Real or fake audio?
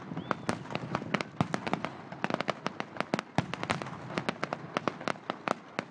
real